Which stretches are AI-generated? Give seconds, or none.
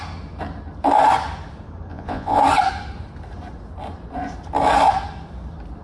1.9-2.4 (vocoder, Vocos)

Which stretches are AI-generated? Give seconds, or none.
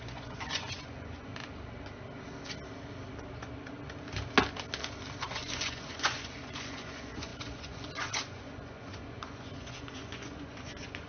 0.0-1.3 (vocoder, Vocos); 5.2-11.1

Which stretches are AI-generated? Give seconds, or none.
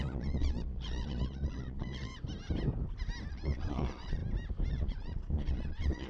0.0-2.1 (vocoder, Vocos); 3.3-4.2; 4.7-6.1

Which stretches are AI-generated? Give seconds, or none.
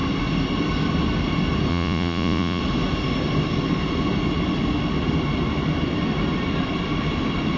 1.7-2.6 (vocoder, Vocos)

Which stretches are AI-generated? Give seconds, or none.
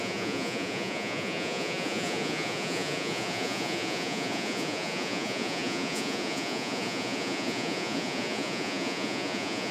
0.0-9.7 (vocoder, Vocos)